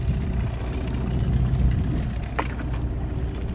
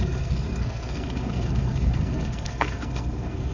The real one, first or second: first